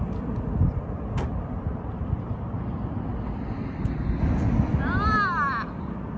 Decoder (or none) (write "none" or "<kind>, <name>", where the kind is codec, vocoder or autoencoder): none